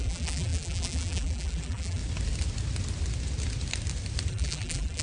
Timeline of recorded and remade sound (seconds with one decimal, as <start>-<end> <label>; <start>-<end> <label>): 0.0-2.0 remade; 2.0-4.3 recorded; 4.3-5.0 remade